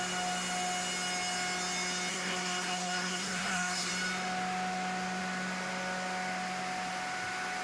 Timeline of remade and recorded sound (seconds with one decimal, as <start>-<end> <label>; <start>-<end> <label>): 0.0-2.1 recorded; 2.1-3.9 remade; 3.9-7.6 recorded